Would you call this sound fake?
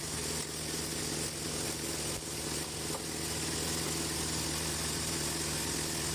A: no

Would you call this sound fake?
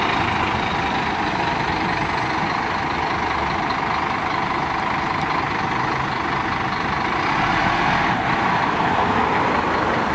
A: no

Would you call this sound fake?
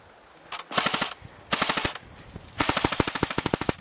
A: no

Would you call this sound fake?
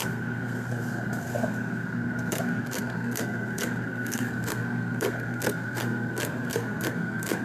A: yes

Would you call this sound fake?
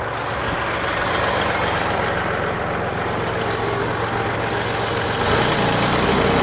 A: no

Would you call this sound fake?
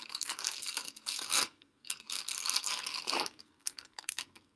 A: yes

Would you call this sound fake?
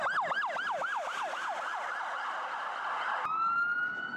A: no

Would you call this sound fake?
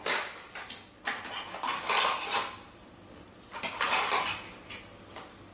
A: no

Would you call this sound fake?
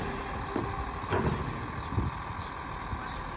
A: no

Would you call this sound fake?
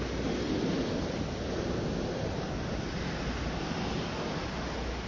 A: no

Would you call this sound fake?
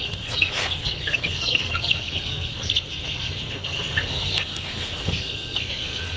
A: yes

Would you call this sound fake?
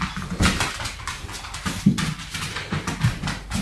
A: no